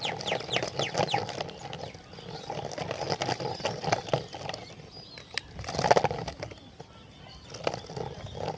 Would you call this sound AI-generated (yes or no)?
no